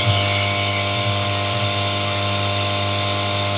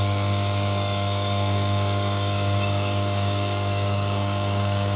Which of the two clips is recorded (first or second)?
first